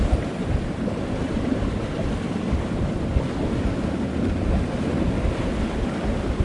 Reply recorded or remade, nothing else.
recorded